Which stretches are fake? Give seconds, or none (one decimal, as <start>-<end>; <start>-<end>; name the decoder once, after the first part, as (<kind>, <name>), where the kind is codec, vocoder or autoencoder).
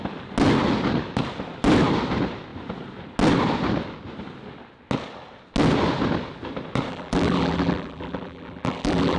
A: 6.9-9.2 (vocoder, BigVGAN v2)